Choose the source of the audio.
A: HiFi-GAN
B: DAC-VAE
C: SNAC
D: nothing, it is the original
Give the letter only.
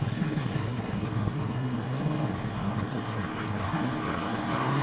C